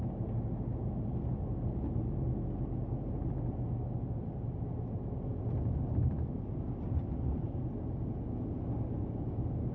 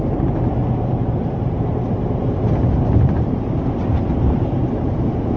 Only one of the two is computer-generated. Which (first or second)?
second